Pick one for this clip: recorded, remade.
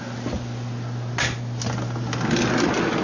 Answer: recorded